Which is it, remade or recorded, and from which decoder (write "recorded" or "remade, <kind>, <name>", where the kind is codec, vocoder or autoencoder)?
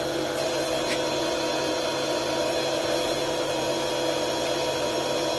recorded